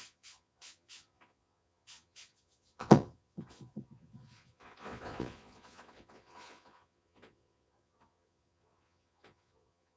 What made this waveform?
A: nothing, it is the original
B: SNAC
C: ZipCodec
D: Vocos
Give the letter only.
D